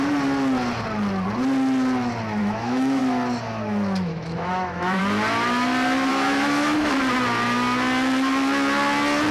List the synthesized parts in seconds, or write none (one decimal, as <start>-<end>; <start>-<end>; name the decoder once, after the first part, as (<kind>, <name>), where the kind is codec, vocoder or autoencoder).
2.4-3.0 (autoencoder, DAC-VAE); 4.1-5.0; 6.1-6.9